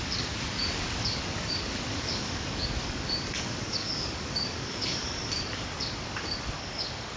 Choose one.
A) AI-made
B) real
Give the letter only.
A